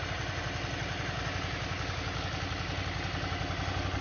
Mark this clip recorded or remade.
recorded